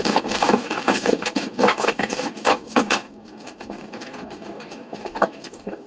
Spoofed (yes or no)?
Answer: yes